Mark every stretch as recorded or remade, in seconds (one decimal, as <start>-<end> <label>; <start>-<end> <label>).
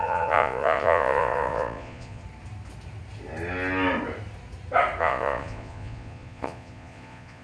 0.0-2.2 remade; 2.2-5.0 recorded; 5.0-7.4 remade